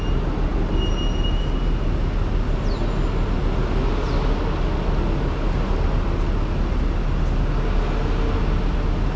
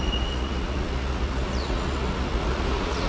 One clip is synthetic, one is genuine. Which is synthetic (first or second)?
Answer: second